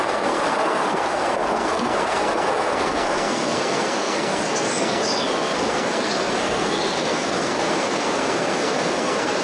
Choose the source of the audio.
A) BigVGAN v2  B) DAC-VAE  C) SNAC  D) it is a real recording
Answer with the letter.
C